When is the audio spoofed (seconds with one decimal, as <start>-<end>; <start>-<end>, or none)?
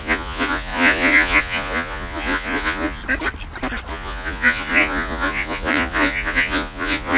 0.0-3.0; 3.9-7.2